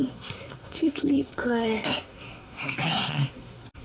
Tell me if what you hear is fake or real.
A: fake